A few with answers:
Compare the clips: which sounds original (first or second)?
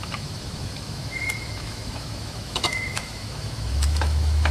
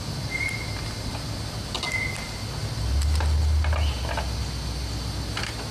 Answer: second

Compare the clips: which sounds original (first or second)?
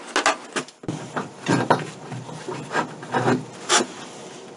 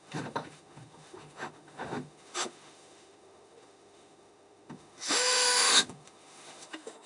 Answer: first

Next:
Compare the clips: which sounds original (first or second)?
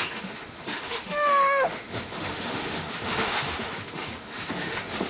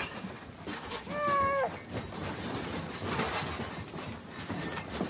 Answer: second